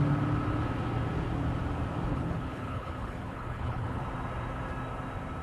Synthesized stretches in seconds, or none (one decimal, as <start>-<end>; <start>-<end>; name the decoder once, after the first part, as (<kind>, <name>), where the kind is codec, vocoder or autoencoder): 2.1-4.0 (codec, HILCodec)